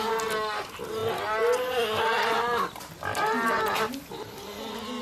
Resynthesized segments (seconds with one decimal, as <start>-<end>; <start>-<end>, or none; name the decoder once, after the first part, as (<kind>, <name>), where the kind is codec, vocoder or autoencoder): none